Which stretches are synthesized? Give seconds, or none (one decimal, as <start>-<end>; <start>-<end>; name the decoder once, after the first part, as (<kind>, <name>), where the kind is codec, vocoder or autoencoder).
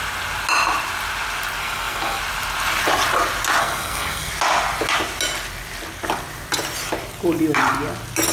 1.6-2.2 (codec, SNAC); 3.6-4.3